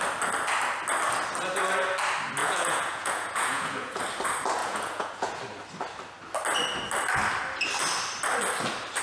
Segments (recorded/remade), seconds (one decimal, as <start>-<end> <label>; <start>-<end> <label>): 0.0-2.4 recorded; 2.4-4.0 remade; 4.0-4.6 recorded; 4.6-5.4 remade; 5.4-9.0 recorded